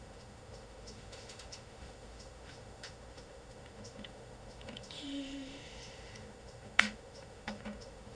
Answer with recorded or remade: remade